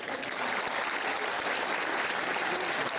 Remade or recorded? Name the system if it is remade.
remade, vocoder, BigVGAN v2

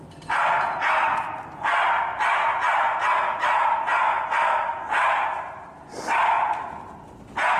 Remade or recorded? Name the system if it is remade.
recorded